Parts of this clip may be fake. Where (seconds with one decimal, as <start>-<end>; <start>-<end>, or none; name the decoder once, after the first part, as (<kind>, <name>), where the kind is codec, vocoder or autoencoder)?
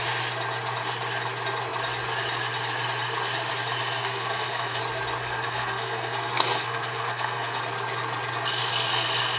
4.0-4.8 (codec, SNAC); 5.2-7.6